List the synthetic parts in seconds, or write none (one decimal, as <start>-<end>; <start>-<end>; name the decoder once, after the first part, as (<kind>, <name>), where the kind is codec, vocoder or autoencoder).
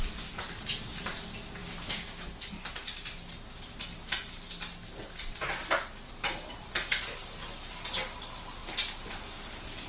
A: 1.6-2.4 (autoencoder, DAC-VAE)